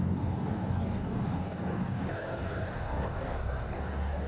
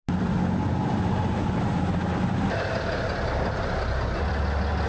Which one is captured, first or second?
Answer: second